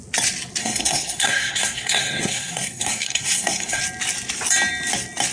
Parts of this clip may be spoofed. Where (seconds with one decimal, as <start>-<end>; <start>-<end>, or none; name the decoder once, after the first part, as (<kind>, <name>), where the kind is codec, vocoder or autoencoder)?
0.6-3.8 (codec, SNAC)